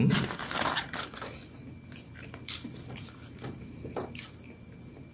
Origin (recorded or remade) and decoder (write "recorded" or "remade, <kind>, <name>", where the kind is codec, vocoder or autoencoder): remade, vocoder, BigVGAN v2